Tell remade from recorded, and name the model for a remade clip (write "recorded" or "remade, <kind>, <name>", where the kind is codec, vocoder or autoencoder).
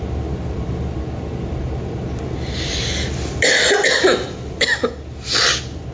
remade, vocoder, BigVGAN v2